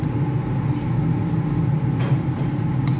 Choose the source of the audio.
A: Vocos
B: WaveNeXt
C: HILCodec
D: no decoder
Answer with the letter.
D